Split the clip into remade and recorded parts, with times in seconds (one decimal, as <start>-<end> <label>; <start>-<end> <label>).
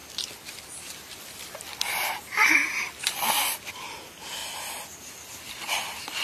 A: 0.0-4.4 remade; 4.4-5.3 recorded; 5.3-6.2 remade